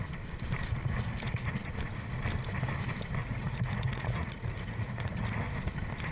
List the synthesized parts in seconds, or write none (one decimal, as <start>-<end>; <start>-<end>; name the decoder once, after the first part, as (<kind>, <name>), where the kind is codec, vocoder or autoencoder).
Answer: 3.2-5.4 (vocoder, Vocos)